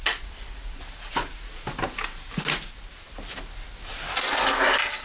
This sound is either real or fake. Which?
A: real